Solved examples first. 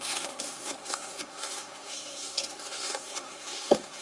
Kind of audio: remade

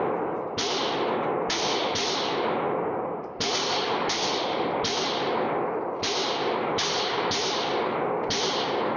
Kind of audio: recorded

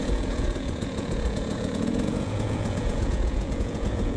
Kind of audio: remade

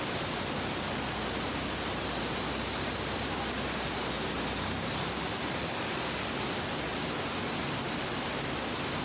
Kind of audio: recorded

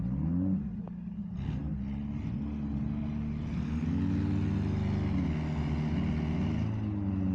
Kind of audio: recorded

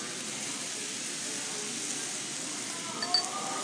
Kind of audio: recorded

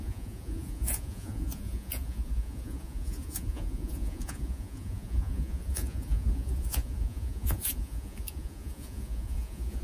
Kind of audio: remade